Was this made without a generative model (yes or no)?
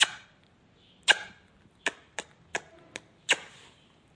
yes